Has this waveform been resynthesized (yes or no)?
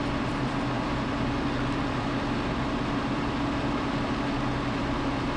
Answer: yes